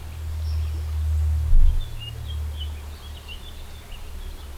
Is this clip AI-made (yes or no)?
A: no